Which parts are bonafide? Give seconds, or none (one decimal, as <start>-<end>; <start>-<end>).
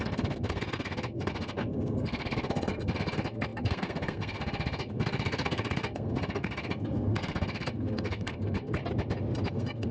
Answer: 8.8-9.5